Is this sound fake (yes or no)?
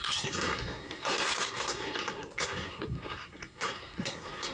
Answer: yes